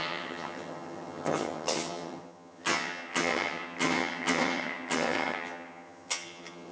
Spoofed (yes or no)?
yes